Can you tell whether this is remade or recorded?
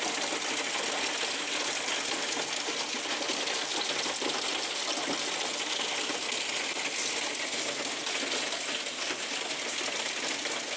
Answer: recorded